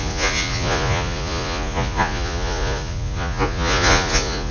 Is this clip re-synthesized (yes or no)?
yes